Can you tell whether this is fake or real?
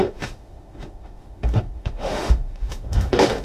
fake